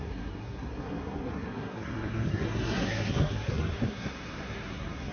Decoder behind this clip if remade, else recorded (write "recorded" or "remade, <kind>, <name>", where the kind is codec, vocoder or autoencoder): remade, codec, SNAC